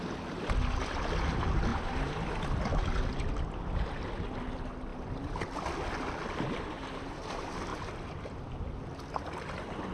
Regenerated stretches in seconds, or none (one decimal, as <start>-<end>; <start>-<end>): none